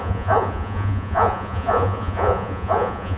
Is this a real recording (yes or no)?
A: no